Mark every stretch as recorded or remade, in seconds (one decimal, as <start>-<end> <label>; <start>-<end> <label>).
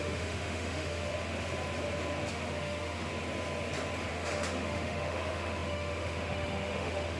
0.0-1.1 remade; 1.1-2.3 recorded; 2.3-3.1 remade; 3.1-4.1 recorded; 4.1-7.2 remade